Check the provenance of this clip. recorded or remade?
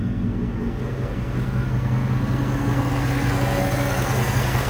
remade